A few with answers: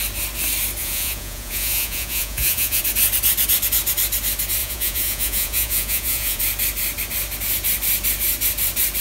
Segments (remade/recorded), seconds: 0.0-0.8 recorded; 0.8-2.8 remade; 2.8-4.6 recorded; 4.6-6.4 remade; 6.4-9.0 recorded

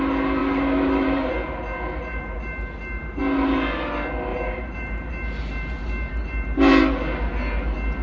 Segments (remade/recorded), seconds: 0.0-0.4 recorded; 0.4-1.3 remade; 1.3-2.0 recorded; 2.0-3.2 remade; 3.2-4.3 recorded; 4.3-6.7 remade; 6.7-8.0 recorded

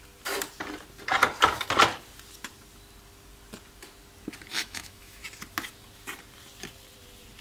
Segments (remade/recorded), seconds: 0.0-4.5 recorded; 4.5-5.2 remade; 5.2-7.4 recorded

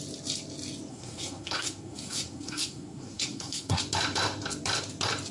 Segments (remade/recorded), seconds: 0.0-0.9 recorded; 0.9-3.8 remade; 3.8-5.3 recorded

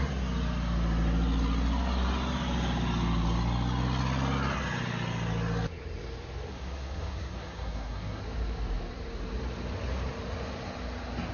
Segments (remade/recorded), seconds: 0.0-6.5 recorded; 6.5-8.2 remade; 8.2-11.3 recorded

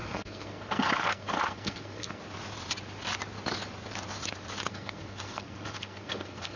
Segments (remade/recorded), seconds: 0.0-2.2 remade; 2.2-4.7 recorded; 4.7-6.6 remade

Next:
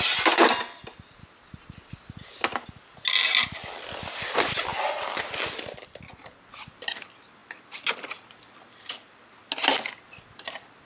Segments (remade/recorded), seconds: 0.0-10.9 recorded